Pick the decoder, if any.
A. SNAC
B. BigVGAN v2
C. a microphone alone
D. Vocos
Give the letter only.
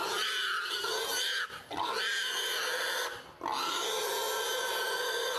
C